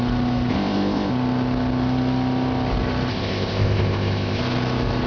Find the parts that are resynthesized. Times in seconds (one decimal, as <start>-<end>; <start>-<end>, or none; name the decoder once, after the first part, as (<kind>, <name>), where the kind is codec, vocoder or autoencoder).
0.5-1.1 (codec, ZipCodec); 3.1-4.4